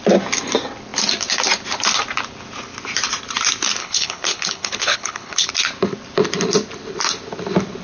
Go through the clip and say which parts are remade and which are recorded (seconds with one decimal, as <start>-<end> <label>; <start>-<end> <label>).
0.0-3.8 recorded; 3.8-5.5 remade; 5.5-7.8 recorded

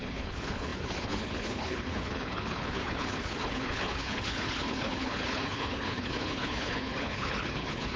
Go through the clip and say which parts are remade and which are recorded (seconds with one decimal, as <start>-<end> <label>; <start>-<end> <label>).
0.0-8.0 remade

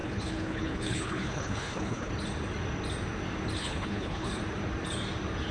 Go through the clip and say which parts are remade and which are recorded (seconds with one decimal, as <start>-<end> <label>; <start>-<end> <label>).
0.0-2.1 remade; 2.1-3.6 recorded; 3.6-4.4 remade; 4.4-5.5 recorded

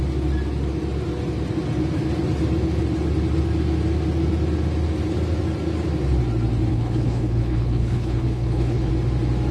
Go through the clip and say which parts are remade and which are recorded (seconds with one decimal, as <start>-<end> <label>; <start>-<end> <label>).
0.0-6.7 recorded; 6.7-8.9 remade; 8.9-9.5 recorded

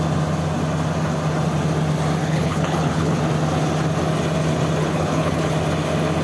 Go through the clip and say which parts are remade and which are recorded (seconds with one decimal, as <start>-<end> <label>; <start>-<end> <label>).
0.0-2.2 recorded; 2.2-3.2 remade; 3.2-4.8 recorded; 4.8-5.5 remade; 5.5-6.2 recorded

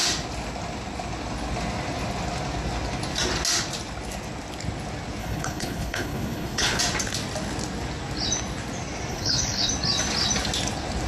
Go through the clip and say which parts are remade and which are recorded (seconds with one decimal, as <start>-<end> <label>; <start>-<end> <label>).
0.0-5.2 recorded; 5.2-6.8 remade; 6.8-9.1 recorded; 9.1-9.7 remade; 9.7-11.1 recorded

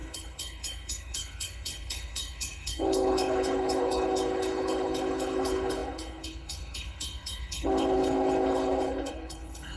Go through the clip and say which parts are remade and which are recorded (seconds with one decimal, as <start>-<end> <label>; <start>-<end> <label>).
0.0-9.8 remade